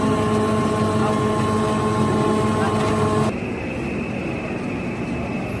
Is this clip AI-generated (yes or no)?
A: no